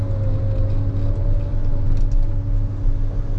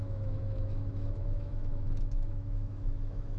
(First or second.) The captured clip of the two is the first